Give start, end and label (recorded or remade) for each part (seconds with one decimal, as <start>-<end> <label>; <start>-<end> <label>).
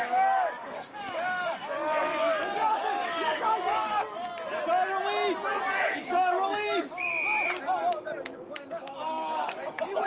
0.0-4.3 remade; 4.3-5.7 recorded; 5.7-7.1 remade; 7.1-8.5 recorded; 8.5-10.1 remade